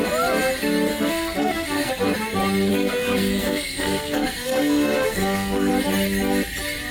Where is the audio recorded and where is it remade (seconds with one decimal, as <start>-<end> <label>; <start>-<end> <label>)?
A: 0.0-0.9 recorded; 0.9-1.9 remade; 1.9-2.7 recorded; 2.7-5.7 remade; 5.7-6.9 recorded